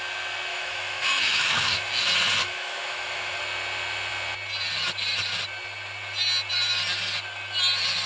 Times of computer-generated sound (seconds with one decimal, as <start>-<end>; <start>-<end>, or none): 0.5-1.9; 2.4-3.4

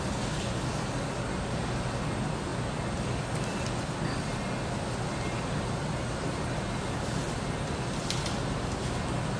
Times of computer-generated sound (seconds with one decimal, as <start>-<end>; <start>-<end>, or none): none

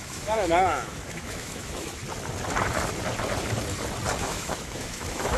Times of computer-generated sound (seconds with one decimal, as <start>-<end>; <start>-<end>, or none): 0.0-2.0; 4.2-5.4

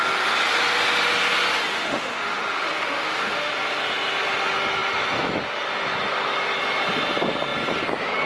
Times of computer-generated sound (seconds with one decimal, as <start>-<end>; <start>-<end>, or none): 1.7-3.5

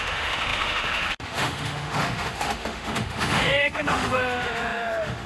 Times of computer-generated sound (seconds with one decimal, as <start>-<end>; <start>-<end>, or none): 0.0-5.3

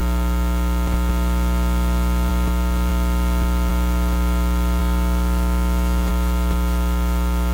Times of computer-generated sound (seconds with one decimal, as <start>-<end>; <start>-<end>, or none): 4.8-6.1